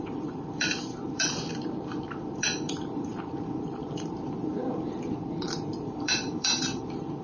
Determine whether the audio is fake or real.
fake